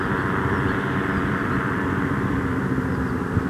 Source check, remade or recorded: remade